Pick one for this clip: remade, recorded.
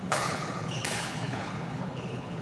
remade